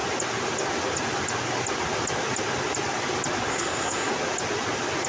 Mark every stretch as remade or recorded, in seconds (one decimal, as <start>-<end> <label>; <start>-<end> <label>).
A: 0.0-3.5 recorded; 3.5-4.1 remade; 4.1-5.1 recorded